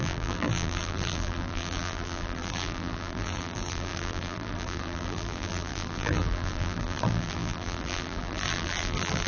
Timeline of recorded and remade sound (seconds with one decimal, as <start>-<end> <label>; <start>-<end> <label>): 0.0-9.3 remade